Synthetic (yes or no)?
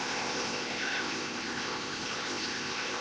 yes